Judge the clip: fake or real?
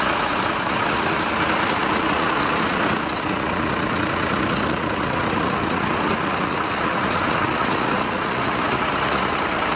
fake